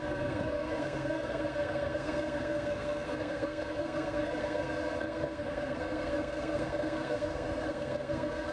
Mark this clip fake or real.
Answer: fake